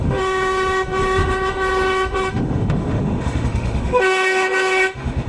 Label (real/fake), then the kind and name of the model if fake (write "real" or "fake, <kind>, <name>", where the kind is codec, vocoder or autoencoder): fake, autoencoder, DAC-VAE